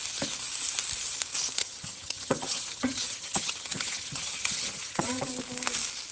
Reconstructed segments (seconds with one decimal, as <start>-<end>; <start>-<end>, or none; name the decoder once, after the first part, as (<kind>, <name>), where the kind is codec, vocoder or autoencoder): 1.6-5.3 (vocoder, HiFi-GAN)